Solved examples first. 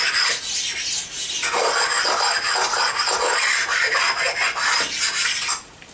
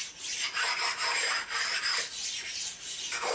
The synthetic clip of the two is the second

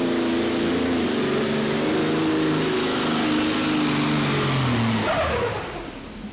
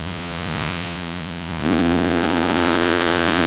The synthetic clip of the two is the second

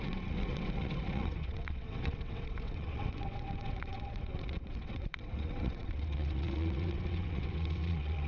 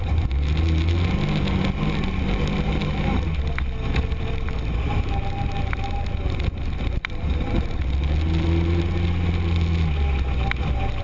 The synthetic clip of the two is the first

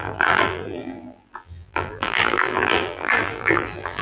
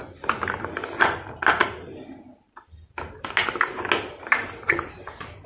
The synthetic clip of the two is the first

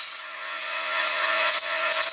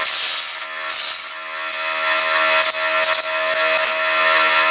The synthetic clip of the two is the first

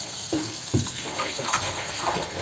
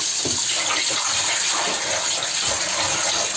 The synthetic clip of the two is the first